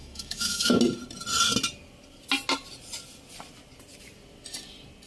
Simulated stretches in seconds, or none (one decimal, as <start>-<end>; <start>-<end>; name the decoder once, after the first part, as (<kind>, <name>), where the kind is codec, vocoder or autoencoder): 0.0-0.8 (autoencoder, DAC-VAE)